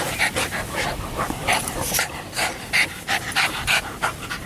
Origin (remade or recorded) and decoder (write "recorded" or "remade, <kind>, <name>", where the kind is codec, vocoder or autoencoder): recorded